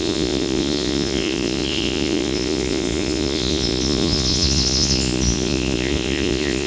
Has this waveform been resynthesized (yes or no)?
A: yes